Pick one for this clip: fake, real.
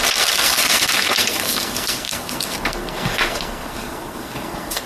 fake